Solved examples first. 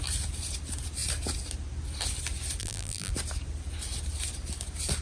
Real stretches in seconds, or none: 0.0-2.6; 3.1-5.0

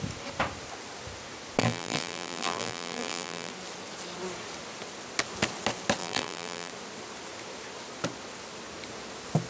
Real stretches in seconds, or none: 0.0-1.6; 3.5-6.0; 6.7-9.5